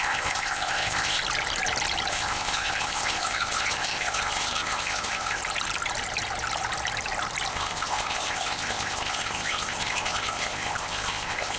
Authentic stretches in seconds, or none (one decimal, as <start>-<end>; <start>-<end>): 1.2-2.1; 5.4-7.5